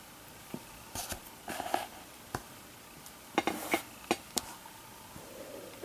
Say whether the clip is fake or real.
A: real